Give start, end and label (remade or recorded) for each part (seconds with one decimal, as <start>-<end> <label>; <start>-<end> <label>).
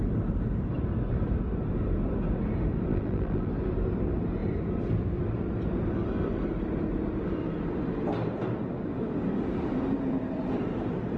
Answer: 0.0-2.9 recorded; 2.9-3.5 remade; 3.5-11.2 recorded